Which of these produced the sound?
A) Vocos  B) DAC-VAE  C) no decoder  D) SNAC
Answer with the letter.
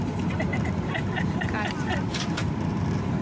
C